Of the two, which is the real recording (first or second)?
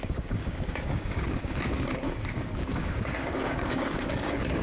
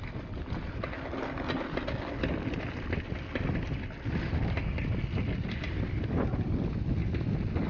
second